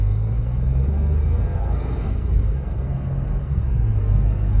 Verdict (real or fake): fake